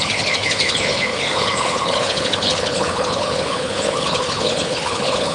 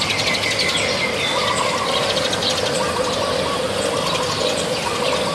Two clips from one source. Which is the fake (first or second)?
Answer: first